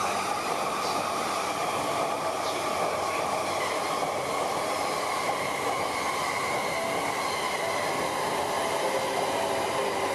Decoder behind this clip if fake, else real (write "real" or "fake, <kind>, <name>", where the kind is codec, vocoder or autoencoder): real